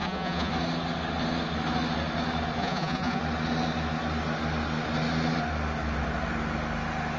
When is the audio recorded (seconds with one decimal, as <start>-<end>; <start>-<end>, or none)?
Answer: 0.5-2.6; 3.2-7.2